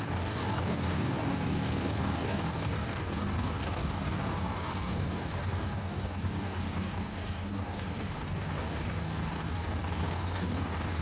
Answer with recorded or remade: remade